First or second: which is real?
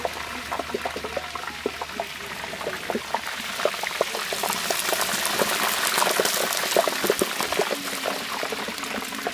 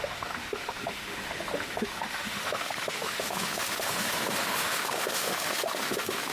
first